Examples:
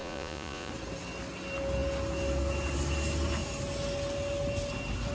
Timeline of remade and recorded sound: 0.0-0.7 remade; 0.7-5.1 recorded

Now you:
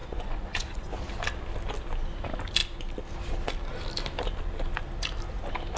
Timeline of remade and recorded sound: 0.0-0.9 remade; 0.9-5.8 recorded

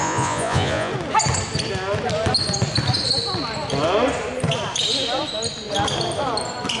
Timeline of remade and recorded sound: 0.0-0.9 remade; 0.9-6.8 recorded

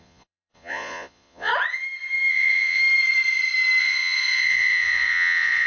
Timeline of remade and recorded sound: 0.0-1.5 remade; 1.5-2.3 recorded; 2.3-2.8 remade; 2.8-3.8 recorded; 3.8-5.7 remade